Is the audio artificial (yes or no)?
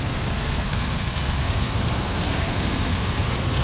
yes